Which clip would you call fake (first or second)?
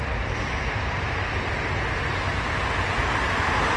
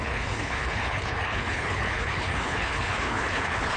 second